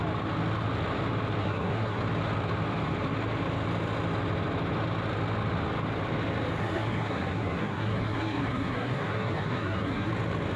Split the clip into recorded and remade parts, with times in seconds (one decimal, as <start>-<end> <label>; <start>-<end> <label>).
0.0-1.4 recorded; 1.4-2.0 remade; 2.0-6.6 recorded; 6.6-10.1 remade; 10.1-10.6 recorded